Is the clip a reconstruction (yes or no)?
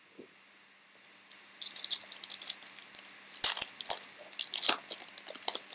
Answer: no